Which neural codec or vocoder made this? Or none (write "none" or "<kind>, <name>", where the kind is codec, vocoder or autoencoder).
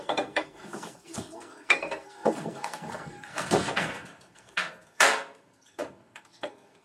codec, SNAC